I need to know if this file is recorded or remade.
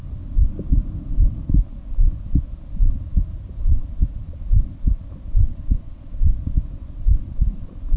recorded